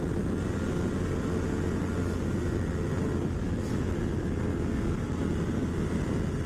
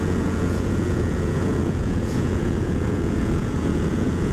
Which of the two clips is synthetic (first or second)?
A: second